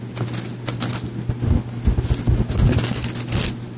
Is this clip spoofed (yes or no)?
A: no